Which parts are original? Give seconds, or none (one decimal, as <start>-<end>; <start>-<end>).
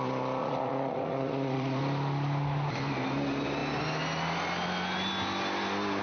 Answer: 0.0-0.4; 1.8-6.0